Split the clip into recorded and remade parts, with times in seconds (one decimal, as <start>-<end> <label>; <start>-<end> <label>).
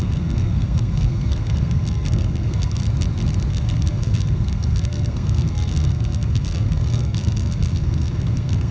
0.0-2.8 remade; 2.8-3.5 recorded; 3.5-8.7 remade